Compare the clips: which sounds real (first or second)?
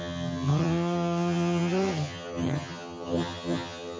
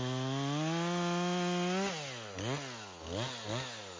second